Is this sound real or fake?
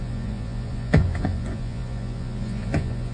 fake